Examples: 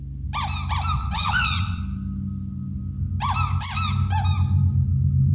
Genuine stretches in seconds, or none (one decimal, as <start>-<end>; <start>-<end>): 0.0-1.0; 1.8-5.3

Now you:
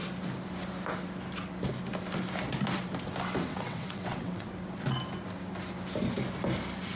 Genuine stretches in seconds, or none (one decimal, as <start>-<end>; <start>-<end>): 0.0-3.5; 4.5-7.0

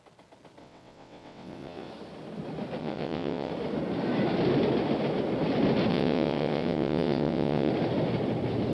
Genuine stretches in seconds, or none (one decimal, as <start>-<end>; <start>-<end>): 0.0-0.6; 1.9-2.8; 3.5-5.9; 7.7-8.7